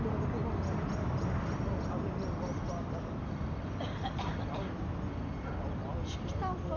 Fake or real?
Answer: real